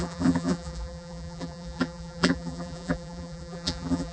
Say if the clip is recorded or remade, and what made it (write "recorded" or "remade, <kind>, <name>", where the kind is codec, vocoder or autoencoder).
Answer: remade, vocoder, BigVGAN v2